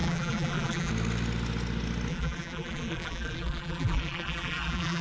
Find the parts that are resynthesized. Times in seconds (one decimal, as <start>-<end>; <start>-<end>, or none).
0.0-0.9; 2.1-5.0